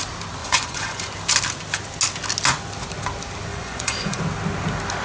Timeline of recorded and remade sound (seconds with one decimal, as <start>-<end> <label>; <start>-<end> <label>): 0.0-0.4 recorded; 0.4-1.1 remade; 1.1-3.5 recorded; 3.5-4.2 remade; 4.2-5.0 recorded